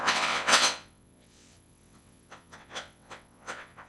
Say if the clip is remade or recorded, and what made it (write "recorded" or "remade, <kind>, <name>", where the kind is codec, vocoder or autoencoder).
remade, vocoder, WaveNeXt